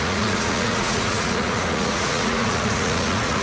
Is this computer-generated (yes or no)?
yes